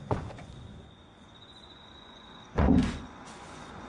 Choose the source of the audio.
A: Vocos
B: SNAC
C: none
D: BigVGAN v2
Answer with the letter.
A